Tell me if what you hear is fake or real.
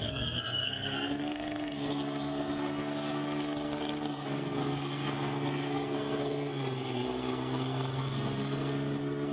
fake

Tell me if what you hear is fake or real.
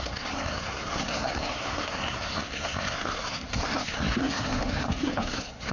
fake